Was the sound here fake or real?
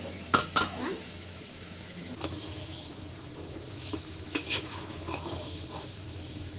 fake